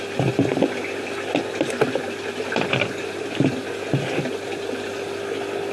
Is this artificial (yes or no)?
no